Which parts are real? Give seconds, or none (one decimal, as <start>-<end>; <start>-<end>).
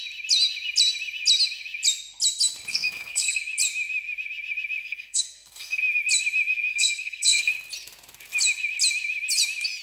0.0-2.7; 3.4-4.8; 5.8-6.7; 7.5-9.8